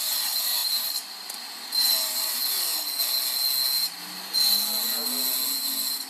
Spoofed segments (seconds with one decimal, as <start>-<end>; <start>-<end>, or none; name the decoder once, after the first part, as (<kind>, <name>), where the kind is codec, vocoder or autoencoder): 0.6-1.3 (vocoder, BigVGAN v2)